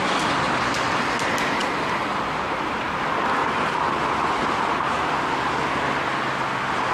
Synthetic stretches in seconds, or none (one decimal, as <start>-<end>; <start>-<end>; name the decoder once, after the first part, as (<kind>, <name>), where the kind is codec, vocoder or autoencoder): 3.4-5.5 (vocoder, BigVGAN v2)